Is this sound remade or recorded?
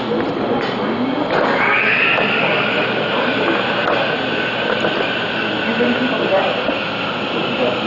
recorded